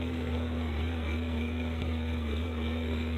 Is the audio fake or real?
fake